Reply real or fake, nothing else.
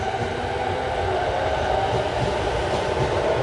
real